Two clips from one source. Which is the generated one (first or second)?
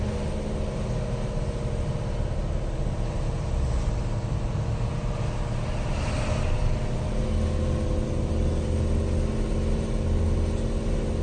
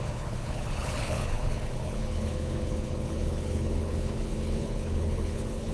second